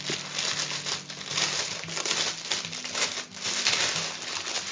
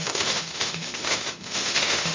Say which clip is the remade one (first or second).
second